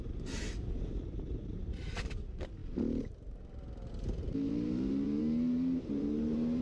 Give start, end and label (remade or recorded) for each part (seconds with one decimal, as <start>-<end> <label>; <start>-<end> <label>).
0.0-2.6 remade; 2.6-3.9 recorded; 3.9-6.6 remade